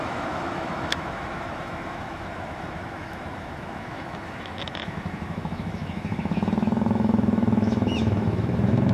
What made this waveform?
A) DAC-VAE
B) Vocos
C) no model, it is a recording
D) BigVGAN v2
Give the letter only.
A